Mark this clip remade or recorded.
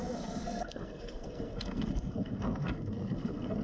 remade